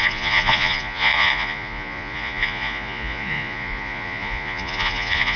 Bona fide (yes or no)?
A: no